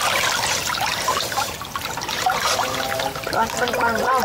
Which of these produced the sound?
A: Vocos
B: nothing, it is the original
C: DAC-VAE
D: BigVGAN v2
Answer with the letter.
B